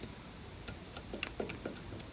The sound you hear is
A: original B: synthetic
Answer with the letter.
A